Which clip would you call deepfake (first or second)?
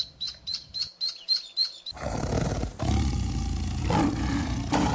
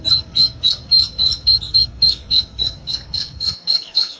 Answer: second